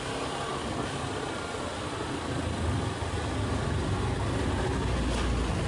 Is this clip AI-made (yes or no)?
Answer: no